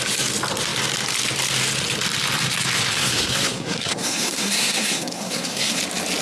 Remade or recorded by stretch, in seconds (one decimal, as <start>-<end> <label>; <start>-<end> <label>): 0.0-3.0 recorded; 3.0-5.8 remade; 5.8-6.2 recorded